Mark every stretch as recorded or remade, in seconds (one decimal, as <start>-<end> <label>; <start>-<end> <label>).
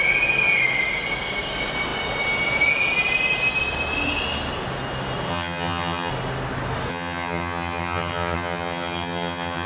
0.0-5.3 recorded; 5.3-6.1 remade; 6.1-6.9 recorded; 6.9-9.7 remade